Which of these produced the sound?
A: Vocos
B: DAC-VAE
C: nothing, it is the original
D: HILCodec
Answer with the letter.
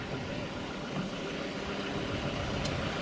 C